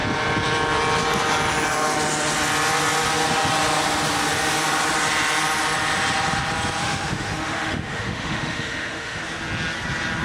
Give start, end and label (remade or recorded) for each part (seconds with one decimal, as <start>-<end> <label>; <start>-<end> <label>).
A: 0.0-6.8 recorded; 6.8-9.2 remade; 9.2-10.2 recorded